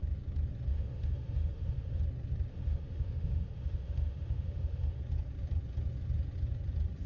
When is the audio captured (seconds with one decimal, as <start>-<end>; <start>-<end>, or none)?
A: 0.0-0.7; 2.0-2.5; 5.0-7.1